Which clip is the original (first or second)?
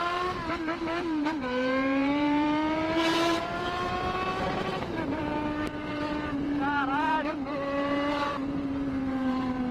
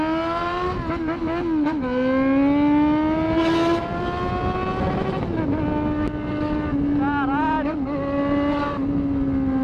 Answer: second